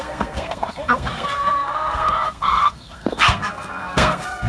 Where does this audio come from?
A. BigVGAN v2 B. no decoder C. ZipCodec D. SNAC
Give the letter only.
D